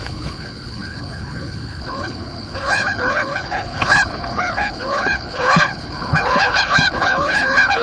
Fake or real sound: fake